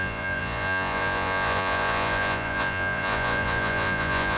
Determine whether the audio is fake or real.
fake